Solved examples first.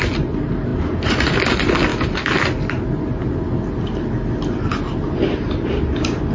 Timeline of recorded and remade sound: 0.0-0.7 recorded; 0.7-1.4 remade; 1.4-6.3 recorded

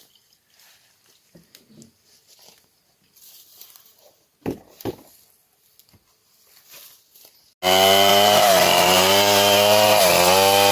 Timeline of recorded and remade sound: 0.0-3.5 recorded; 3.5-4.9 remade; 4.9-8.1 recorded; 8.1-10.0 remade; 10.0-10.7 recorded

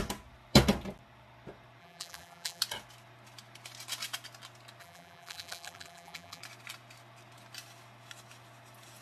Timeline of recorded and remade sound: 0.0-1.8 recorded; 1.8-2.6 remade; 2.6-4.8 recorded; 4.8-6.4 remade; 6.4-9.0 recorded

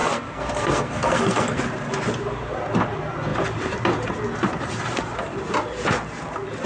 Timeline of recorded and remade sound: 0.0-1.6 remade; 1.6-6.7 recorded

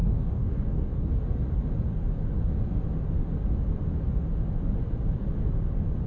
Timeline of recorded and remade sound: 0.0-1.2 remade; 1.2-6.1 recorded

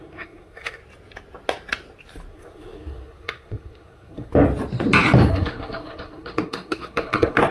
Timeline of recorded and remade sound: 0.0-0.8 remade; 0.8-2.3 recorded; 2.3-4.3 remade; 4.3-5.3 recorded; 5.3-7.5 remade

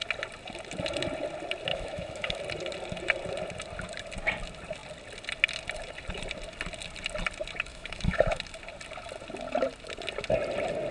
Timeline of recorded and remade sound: 0.0-1.7 recorded; 1.7-2.4 remade; 2.4-7.7 recorded; 7.7-8.4 remade; 8.4-10.9 recorded

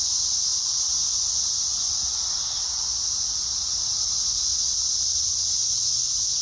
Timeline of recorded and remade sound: 0.0-6.4 recorded